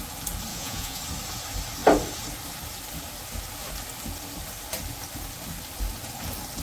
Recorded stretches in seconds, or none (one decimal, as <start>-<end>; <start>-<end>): 0.0-0.5; 1.0-6.6